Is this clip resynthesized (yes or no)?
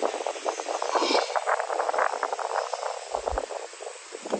no